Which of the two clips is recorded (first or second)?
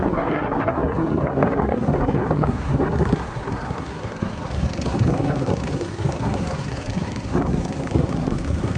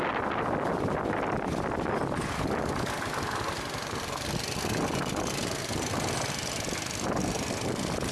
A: second